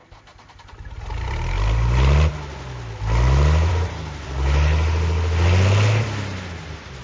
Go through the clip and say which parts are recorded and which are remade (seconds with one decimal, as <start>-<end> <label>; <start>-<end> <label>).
0.0-7.0 recorded